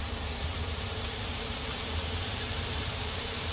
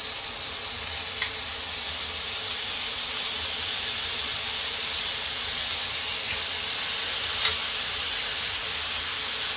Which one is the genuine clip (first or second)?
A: second